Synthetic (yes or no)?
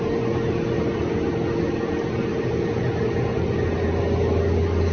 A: no